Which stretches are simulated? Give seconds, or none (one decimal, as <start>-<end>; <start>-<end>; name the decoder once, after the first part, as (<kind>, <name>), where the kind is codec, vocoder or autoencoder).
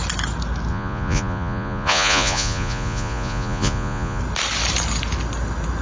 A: 0.7-4.2 (vocoder, Vocos)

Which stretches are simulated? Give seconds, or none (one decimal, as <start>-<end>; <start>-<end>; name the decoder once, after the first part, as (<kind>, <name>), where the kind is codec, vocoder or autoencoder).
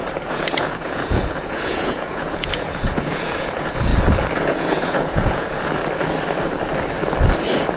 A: 0.0-3.9 (vocoder, Vocos); 4.4-5.8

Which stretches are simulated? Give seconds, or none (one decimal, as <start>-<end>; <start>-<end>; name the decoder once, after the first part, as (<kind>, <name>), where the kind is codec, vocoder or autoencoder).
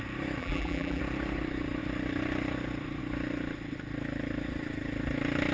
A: 0.4-1.0 (vocoder, BigVGAN v2)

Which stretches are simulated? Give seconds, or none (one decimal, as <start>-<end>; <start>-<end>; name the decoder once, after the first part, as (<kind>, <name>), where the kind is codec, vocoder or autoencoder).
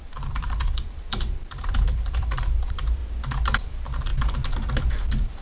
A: 0.0-3.0 (vocoder, BigVGAN v2); 3.6-4.1; 4.8-5.4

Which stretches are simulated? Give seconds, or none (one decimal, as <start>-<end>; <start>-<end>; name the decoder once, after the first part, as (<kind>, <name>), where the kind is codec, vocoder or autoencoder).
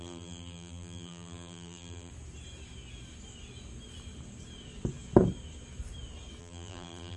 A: 0.0-2.1 (vocoder, BigVGAN v2); 6.4-7.2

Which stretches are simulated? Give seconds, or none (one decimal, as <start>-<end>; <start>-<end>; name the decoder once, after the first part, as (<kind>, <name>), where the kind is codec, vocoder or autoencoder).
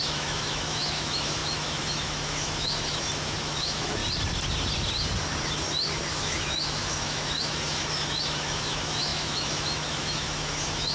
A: 0.0-4.0 (autoencoder, DAC-VAE); 6.1-10.9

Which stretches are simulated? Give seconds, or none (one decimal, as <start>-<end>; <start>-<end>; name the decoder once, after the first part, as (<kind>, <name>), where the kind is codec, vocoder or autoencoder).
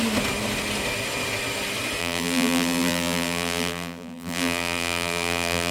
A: 2.0-5.7 (vocoder, BigVGAN v2)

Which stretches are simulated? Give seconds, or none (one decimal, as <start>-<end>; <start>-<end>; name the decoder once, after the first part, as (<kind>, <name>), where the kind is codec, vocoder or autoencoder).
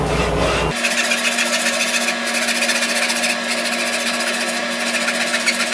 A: none